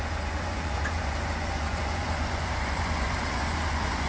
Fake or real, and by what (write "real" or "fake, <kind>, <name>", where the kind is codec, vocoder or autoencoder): fake, vocoder, Vocos